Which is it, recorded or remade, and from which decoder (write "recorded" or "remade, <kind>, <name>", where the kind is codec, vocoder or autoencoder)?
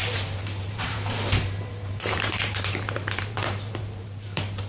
remade, vocoder, BigVGAN v2